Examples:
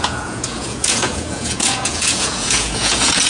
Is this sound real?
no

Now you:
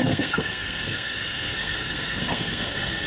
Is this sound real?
no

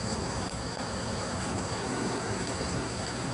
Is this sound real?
no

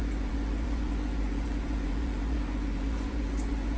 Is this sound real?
no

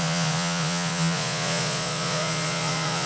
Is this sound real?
no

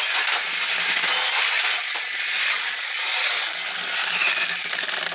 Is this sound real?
yes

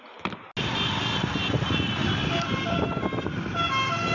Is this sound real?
yes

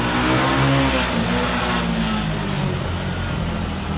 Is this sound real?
yes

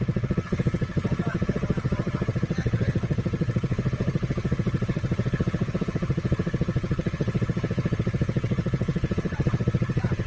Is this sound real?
no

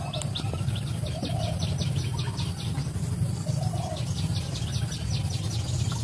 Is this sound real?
yes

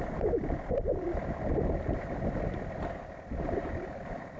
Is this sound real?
no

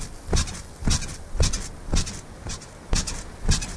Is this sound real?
yes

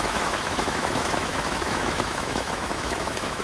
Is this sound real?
no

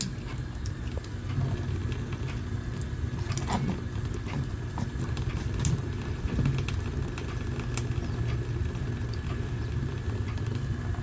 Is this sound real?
yes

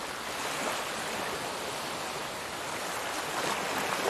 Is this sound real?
yes